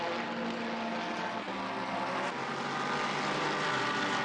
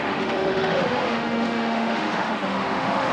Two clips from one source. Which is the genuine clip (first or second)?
first